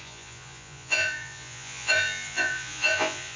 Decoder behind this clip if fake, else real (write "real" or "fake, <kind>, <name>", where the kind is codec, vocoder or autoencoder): fake, vocoder, Vocos